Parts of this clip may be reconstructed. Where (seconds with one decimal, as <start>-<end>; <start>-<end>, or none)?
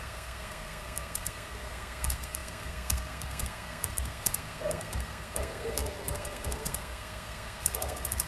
0.0-8.3